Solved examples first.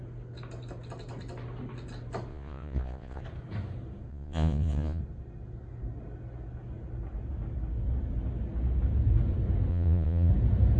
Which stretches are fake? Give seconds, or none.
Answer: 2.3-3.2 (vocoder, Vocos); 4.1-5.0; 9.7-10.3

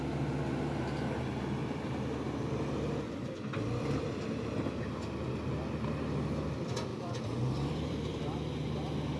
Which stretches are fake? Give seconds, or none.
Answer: 1.6-4.4 (vocoder, BigVGAN v2); 6.9-8.2

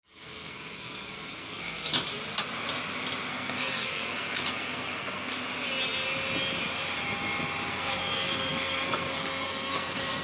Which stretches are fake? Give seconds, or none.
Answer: 0.0-1.9 (codec, SNAC); 3.3-5.3; 7.7-10.2

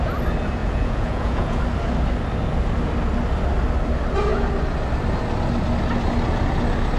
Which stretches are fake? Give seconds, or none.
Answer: 0.6-1.6 (vocoder, Vocos)

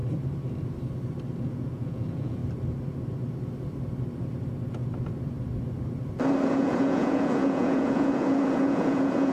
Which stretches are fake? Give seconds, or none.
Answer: 1.4-2.4 (vocoder, Vocos); 6.5-9.3

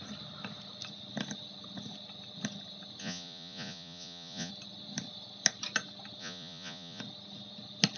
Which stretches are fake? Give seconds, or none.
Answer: 3.0-4.5 (vocoder, Vocos); 6.2-7.0

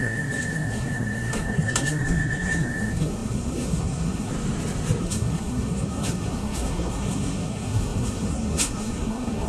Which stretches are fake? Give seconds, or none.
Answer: 0.0-4.3 (codec, SNAC); 5.0-9.5